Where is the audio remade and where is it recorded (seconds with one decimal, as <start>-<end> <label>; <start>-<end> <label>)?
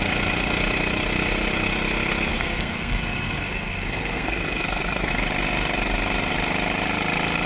0.0-2.3 recorded; 2.3-5.1 remade; 5.1-7.5 recorded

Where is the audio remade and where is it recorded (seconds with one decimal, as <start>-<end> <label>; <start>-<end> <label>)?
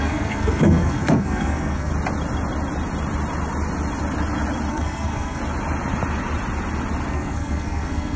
0.0-1.9 remade; 1.9-4.7 recorded; 4.7-5.4 remade; 5.4-7.1 recorded; 7.1-8.2 remade